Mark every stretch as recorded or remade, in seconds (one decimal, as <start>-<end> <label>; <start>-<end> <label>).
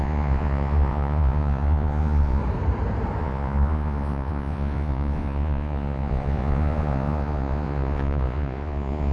0.0-2.4 remade; 2.4-3.2 recorded; 3.2-9.1 remade